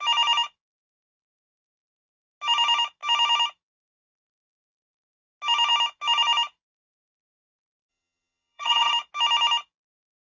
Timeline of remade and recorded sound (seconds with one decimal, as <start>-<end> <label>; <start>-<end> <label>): 0.0-7.9 recorded; 7.9-8.9 remade; 8.9-10.2 recorded